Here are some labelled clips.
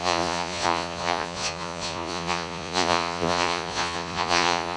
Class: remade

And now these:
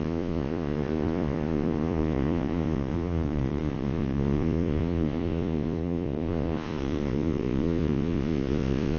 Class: remade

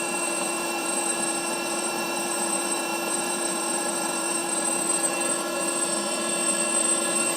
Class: remade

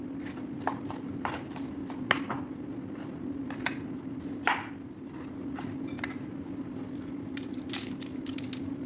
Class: recorded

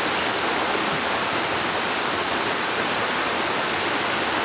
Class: recorded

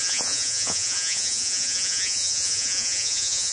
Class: remade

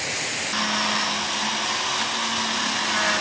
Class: recorded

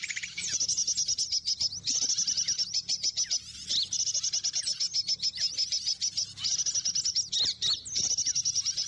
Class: recorded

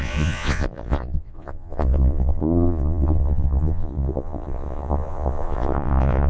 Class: remade